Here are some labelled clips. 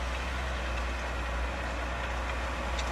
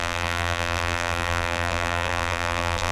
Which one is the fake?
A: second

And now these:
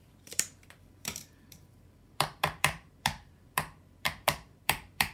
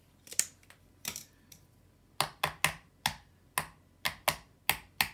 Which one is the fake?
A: first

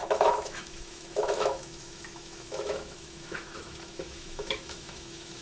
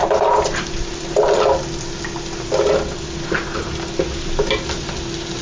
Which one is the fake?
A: first